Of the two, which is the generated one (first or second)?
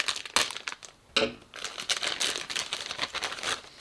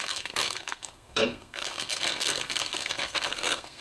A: second